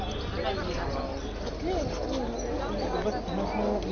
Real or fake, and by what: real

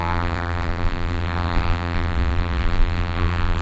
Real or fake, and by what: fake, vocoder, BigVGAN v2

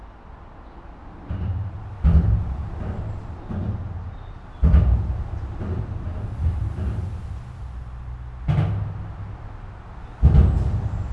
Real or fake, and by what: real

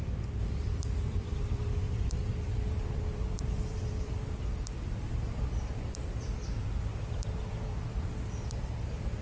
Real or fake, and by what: fake, vocoder, BigVGAN v2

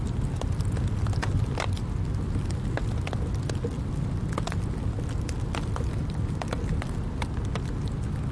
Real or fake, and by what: real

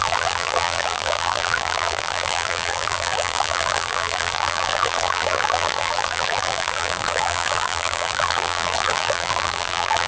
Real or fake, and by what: fake, vocoder, BigVGAN v2